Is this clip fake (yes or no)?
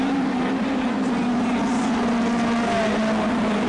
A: no